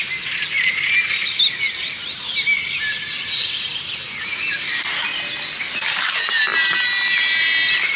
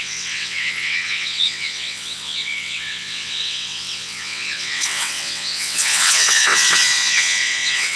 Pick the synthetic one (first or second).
second